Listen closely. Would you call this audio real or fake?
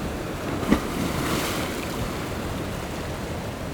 real